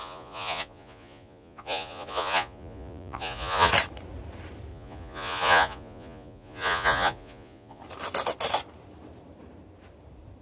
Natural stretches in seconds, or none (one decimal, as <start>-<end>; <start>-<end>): 3.7-4.7; 7.8-10.4